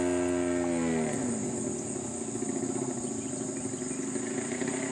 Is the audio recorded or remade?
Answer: recorded